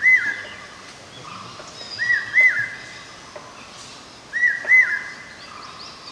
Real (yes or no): yes